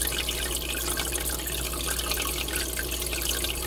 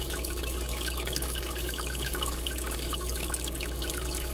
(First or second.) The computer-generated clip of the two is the second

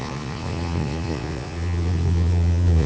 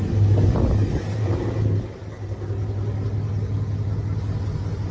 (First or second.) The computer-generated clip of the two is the first